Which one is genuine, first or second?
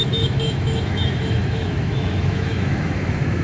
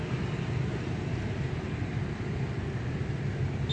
second